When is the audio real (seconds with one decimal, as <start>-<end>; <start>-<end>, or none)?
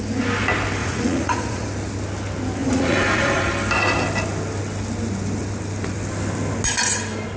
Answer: 0.0-0.8; 1.7-2.6; 3.5-7.4